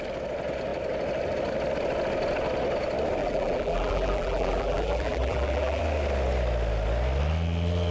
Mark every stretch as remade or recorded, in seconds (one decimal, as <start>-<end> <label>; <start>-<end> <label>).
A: 0.0-3.2 recorded; 3.2-5.8 remade; 5.8-7.9 recorded